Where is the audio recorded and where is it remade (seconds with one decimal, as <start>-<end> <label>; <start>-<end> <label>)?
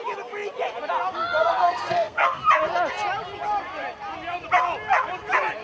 0.0-1.4 recorded; 1.4-2.4 remade; 2.4-5.6 recorded